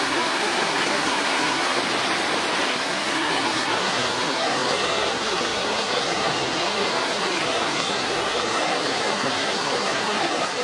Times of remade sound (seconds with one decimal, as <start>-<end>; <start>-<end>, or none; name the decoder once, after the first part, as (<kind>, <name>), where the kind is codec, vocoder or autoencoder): 0.0-1.8 (codec, SNAC); 2.7-10.6